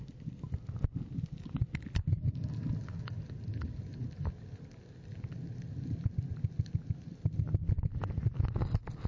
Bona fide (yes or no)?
yes